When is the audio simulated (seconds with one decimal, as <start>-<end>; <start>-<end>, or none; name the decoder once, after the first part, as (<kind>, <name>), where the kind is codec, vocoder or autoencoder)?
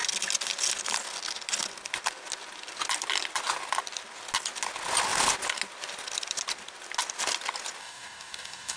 7.8-8.8 (codec, DAC)